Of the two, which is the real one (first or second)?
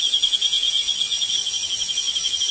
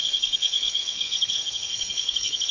first